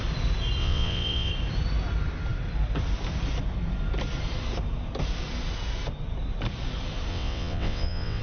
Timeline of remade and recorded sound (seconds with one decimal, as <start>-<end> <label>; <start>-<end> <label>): 0.0-0.6 recorded; 0.6-1.3 remade; 1.3-7.1 recorded; 7.1-8.2 remade